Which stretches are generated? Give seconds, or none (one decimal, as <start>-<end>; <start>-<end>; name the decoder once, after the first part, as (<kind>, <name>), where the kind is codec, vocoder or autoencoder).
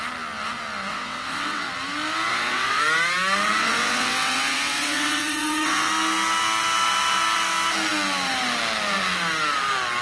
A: 0.9-1.7 (vocoder, WaveNeXt); 2.3-2.8; 3.6-5.9